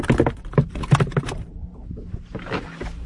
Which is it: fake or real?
real